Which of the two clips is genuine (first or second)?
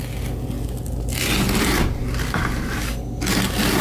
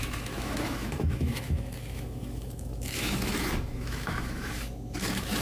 first